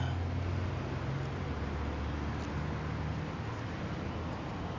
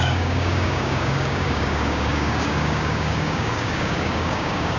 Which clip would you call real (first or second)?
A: first